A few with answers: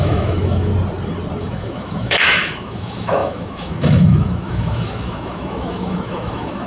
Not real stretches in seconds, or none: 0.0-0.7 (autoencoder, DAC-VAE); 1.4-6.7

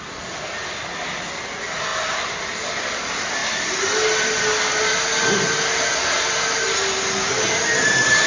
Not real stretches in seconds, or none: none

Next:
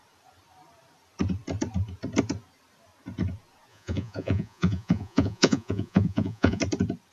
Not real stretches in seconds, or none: 3.7-6.6 (vocoder, Vocos)

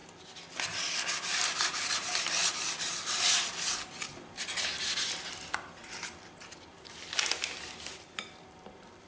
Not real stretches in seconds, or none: none

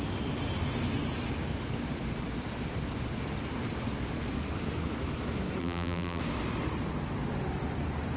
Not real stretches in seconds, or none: 5.6-6.2 (vocoder, BigVGAN v2)

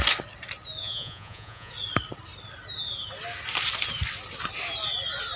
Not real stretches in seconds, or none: 0.8-1.7 (vocoder, Vocos)

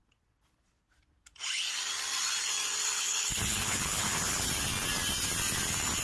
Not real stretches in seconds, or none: 2.8-4.5 (codec, HILCodec)

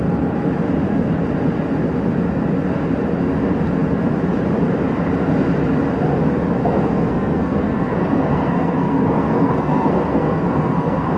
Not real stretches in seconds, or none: 6.6-11.2 (codec, SNAC)